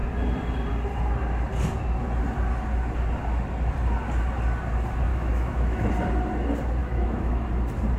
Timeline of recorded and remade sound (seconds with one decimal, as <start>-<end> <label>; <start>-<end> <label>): 0.0-5.1 recorded; 5.1-5.9 remade; 5.9-6.8 recorded; 6.8-7.5 remade; 7.5-8.0 recorded